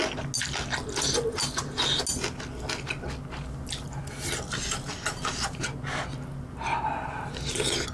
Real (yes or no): yes